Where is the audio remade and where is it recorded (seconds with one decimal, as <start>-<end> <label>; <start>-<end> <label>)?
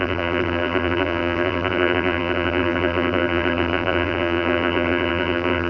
0.0-5.7 remade